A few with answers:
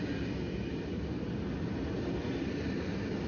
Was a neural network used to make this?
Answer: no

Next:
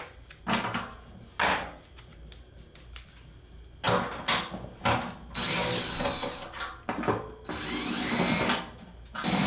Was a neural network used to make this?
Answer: no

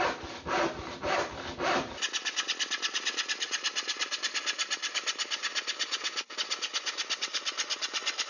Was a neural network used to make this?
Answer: yes